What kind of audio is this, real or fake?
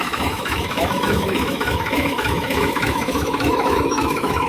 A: fake